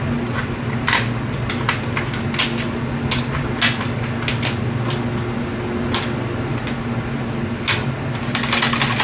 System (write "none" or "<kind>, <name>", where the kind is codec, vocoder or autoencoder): none